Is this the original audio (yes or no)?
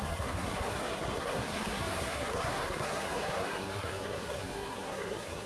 no